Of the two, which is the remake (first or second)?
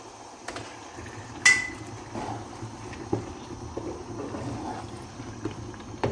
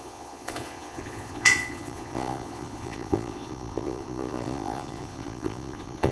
second